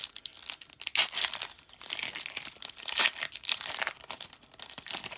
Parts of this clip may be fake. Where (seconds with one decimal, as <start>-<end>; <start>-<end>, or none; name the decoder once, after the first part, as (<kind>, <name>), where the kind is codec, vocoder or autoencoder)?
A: 1.0-2.0 (vocoder, BigVGAN v2)

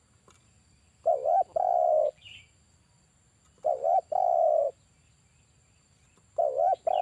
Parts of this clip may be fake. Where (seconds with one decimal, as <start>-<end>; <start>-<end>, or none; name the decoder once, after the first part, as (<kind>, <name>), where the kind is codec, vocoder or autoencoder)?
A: 1.5-2.2 (vocoder, BigVGAN v2)